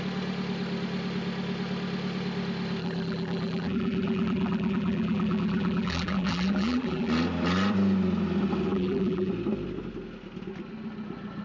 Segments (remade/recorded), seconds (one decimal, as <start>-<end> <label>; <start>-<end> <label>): 0.0-2.8 recorded; 2.8-7.1 remade; 7.1-8.7 recorded; 8.7-9.3 remade; 9.3-11.4 recorded